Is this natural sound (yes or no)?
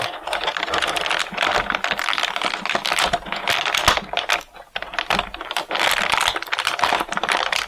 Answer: yes